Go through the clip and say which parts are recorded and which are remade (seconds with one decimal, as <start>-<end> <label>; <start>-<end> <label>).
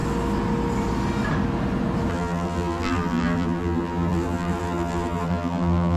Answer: 0.0-2.1 recorded; 2.1-6.0 remade